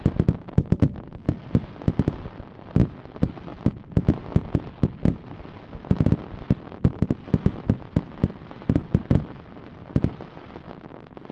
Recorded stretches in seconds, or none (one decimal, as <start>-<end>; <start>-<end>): 0.0-11.3